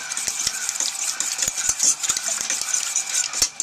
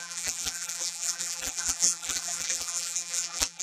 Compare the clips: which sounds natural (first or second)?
first